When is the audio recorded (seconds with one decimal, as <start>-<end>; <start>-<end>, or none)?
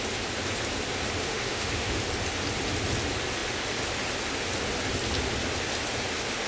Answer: 0.0-1.2; 2.0-6.5